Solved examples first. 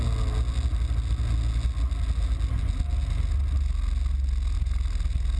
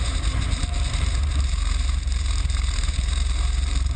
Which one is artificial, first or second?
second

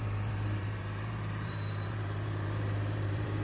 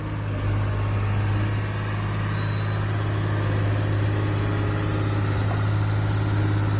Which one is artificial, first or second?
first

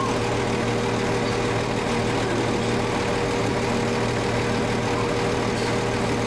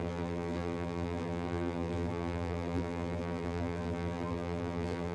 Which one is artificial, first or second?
second